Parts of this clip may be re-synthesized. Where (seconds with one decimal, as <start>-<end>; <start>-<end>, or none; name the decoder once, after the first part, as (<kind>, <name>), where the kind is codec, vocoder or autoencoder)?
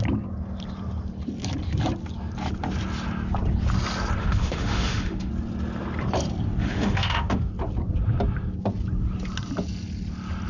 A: 4.2-5.3 (autoencoder, DAC-VAE); 6.6-7.5